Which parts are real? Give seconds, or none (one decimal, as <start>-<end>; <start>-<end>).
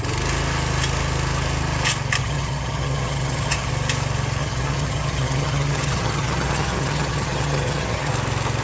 0.0-2.2; 3.7-4.4; 8.1-8.6